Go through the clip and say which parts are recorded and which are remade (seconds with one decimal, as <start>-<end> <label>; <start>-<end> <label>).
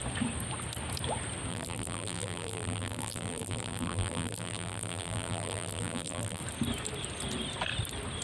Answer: 0.0-1.5 recorded; 1.5-6.4 remade; 6.4-8.2 recorded